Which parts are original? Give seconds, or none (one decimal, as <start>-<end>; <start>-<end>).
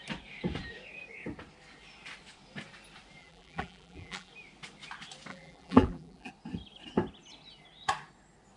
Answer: 0.0-3.2; 4.3-5.3; 6.3-8.6